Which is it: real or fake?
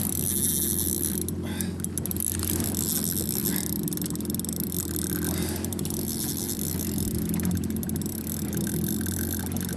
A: real